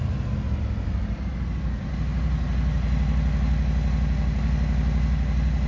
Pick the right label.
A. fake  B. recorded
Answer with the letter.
B